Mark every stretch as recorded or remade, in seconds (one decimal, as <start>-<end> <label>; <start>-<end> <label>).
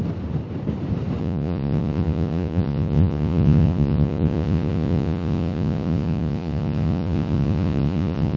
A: 0.0-1.2 recorded; 1.2-8.4 remade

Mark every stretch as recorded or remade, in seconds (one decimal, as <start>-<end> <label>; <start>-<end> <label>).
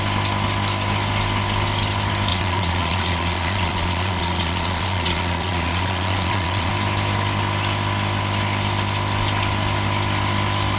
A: 0.0-2.3 recorded; 2.3-6.7 remade; 6.7-10.8 recorded